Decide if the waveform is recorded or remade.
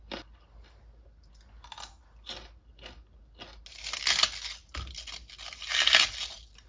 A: recorded